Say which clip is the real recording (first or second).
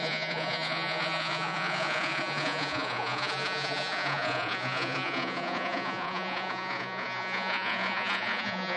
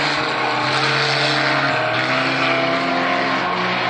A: second